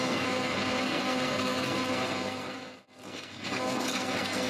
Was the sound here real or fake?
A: fake